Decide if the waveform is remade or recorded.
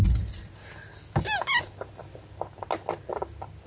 recorded